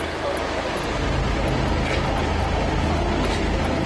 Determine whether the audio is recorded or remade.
recorded